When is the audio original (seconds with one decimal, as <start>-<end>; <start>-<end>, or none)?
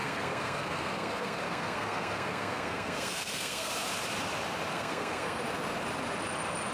3.7-4.7; 5.4-6.7